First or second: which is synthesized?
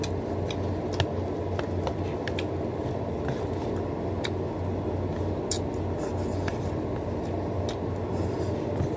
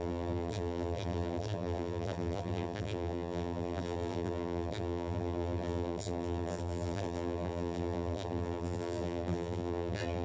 second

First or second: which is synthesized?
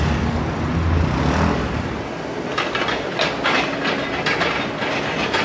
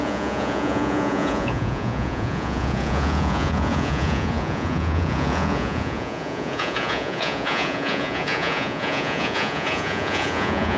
second